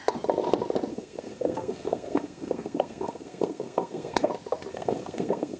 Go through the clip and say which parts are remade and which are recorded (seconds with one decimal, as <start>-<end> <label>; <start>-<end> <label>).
0.0-0.9 recorded; 0.9-4.3 remade; 4.3-4.7 recorded; 4.7-5.6 remade